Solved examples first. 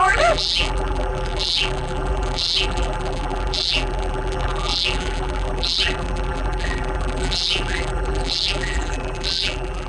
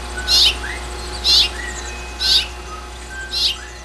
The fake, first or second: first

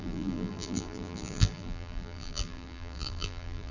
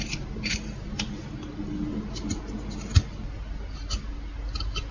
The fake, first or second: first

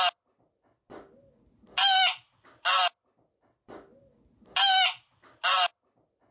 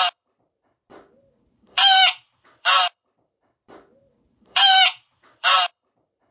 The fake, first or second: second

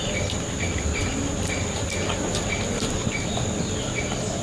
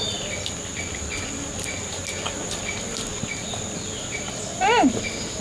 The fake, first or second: first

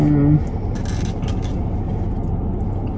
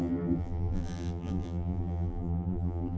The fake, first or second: second